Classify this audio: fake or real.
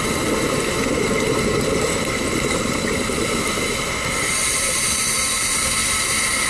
real